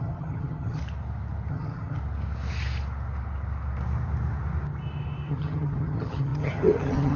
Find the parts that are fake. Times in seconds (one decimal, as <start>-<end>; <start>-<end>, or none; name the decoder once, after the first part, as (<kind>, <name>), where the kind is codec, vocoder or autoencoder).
0.0-0.8 (vocoder, HiFi-GAN); 1.5-2.0; 5.3-7.2